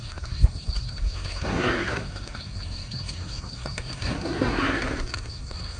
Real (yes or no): no